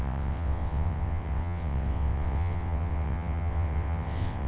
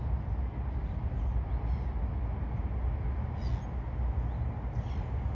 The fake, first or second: first